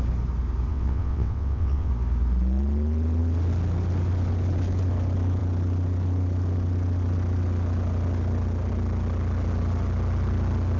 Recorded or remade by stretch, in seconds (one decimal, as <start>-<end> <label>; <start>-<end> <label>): 0.0-0.7 recorded; 0.7-1.9 remade; 1.9-10.8 recorded